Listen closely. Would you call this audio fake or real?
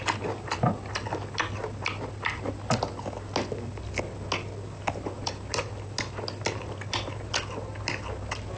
real